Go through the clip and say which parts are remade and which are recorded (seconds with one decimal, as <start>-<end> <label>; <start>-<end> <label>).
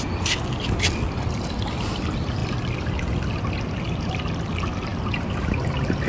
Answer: 0.0-6.1 recorded